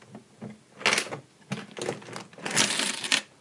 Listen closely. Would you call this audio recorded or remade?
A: recorded